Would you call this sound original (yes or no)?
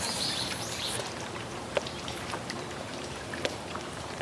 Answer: no